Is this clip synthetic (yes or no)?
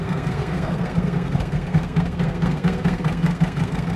yes